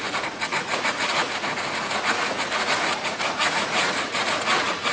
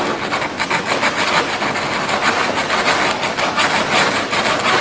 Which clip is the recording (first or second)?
second